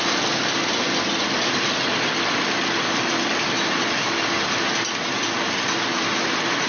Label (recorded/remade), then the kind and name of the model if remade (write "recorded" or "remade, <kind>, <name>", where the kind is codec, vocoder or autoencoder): recorded